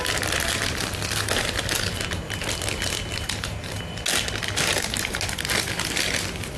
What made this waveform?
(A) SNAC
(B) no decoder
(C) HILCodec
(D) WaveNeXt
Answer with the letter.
B